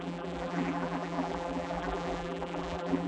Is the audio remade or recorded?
remade